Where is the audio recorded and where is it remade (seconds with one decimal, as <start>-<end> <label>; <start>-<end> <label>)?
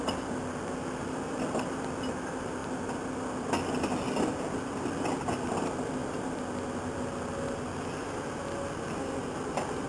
0.0-9.9 recorded